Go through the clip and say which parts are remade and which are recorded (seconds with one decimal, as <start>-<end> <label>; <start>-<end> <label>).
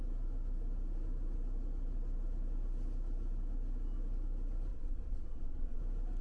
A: 0.0-4.7 recorded; 4.7-5.8 remade; 5.8-6.2 recorded